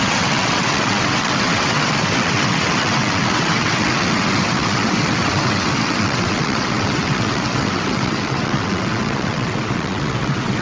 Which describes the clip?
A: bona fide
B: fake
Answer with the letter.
B